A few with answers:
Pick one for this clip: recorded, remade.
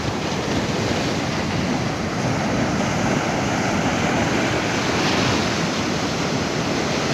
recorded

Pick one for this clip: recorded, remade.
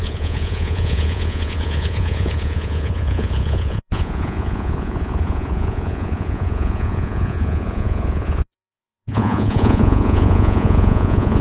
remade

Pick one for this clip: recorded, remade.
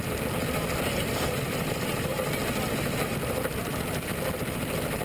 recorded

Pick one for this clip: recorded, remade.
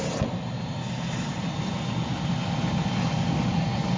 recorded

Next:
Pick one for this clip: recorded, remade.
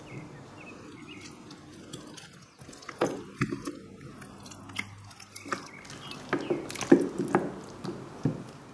recorded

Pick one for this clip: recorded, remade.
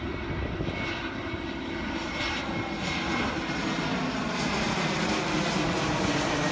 recorded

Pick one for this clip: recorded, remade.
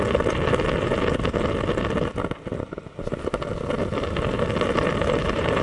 recorded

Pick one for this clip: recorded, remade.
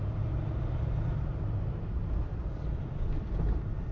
remade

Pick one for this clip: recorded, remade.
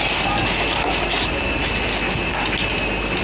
recorded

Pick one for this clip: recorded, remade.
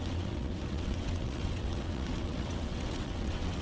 remade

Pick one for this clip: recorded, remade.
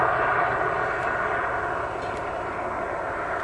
recorded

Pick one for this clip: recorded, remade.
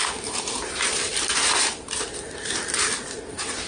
recorded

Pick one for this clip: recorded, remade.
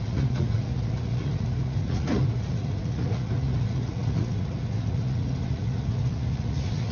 remade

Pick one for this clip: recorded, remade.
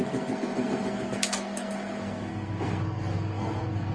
remade